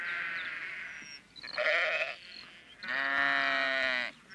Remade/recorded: recorded